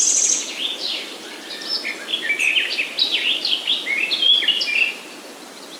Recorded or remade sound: recorded